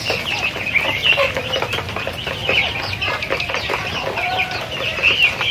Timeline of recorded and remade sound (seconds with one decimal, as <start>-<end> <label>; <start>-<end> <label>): 0.0-2.4 recorded; 2.4-3.6 remade; 3.6-5.5 recorded

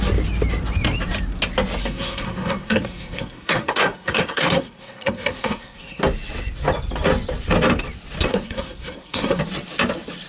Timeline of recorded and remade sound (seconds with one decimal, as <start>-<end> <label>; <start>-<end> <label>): 0.0-1.8 recorded; 1.8-6.0 remade; 6.0-8.3 recorded; 8.3-9.4 remade; 9.4-10.3 recorded

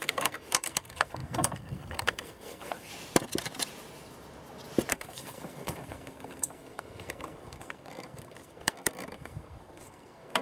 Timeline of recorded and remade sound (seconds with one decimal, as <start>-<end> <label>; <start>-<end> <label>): 0.0-2.9 remade; 2.9-4.9 recorded; 4.9-10.4 remade

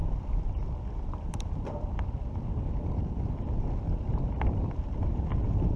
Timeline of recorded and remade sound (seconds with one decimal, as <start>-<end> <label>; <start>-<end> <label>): 0.0-3.4 remade; 3.4-5.8 recorded

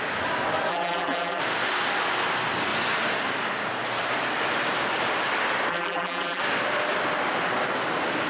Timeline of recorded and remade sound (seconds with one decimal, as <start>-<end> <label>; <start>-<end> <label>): 0.0-0.7 recorded; 0.7-1.4 remade; 1.4-5.7 recorded; 5.7-6.4 remade; 6.4-8.3 recorded

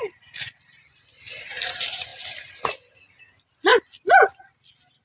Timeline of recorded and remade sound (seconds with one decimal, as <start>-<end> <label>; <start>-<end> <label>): 0.0-5.0 recorded

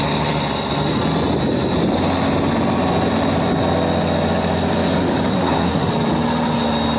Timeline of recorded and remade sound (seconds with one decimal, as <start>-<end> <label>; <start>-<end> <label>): 0.0-5.3 recorded; 5.3-5.9 remade; 5.9-7.0 recorded